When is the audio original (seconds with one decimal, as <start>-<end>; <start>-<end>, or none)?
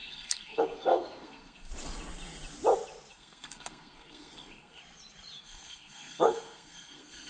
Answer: 1.7-3.1; 4.8-5.4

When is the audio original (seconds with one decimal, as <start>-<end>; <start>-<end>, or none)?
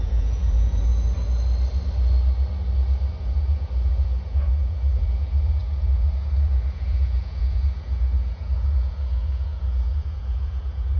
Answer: 0.9-3.2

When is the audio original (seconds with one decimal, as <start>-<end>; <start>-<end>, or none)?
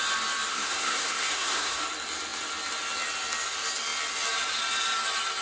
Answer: 0.0-0.5; 1.8-5.4